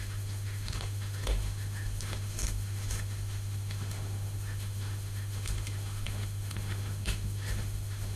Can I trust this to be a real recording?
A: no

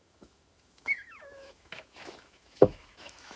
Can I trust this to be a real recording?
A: no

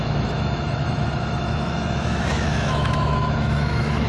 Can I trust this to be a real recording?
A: no